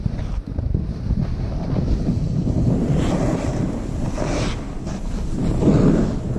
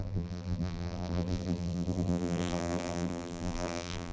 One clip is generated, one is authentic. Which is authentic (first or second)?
first